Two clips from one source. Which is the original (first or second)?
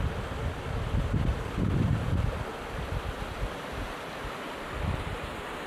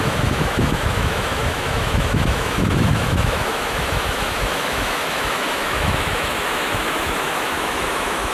first